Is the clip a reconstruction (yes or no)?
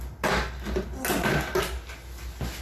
no